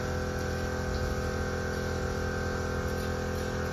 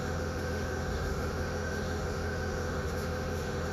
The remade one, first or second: second